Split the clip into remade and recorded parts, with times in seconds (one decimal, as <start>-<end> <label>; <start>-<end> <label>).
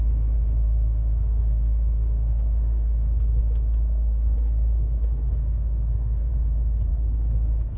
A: 0.0-6.3 remade; 6.3-6.9 recorded; 6.9-7.8 remade